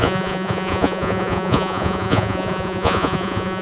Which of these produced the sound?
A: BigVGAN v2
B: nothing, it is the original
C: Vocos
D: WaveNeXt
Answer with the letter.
C